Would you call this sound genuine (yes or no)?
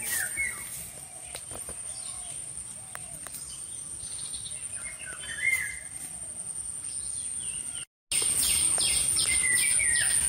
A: yes